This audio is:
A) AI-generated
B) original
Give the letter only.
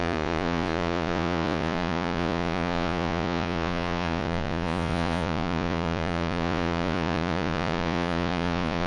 A